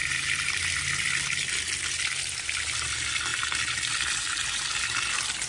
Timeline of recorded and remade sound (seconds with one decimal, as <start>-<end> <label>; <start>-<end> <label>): 0.0-5.5 recorded

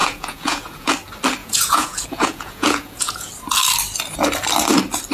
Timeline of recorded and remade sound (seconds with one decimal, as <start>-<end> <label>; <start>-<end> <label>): 0.0-0.9 remade; 0.9-1.4 recorded; 1.4-3.3 remade; 3.3-5.1 recorded

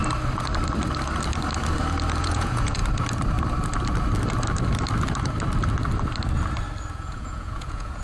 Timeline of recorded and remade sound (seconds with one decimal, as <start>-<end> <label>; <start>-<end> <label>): 0.0-2.2 recorded; 2.2-2.8 remade; 2.8-6.9 recorded; 6.9-8.0 remade

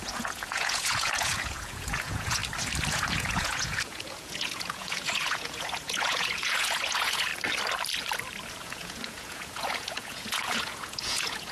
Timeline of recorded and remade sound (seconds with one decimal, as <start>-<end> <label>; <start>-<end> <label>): 0.0-2.4 remade; 2.4-2.9 recorded; 2.9-7.3 remade; 7.3-8.5 recorded; 8.5-11.5 remade

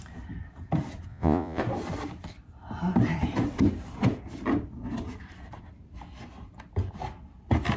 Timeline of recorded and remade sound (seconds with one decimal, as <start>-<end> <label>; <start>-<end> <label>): 0.0-1.1 recorded; 1.1-1.6 remade; 1.6-7.8 recorded

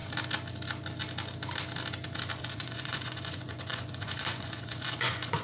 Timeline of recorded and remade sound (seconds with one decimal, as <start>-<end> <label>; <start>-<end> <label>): 0.0-2.4 recorded; 2.4-5.4 remade

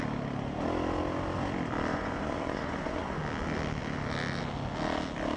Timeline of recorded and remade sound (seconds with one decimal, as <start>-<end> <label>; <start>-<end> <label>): 0.0-1.9 recorded; 1.9-3.2 remade; 3.2-5.4 recorded

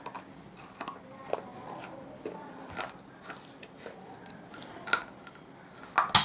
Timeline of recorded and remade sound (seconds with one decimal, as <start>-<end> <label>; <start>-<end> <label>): 0.0-6.2 recorded